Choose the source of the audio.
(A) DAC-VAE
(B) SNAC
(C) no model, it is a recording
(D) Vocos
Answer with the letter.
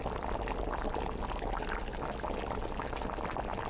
C